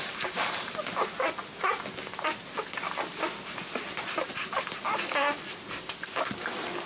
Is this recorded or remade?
recorded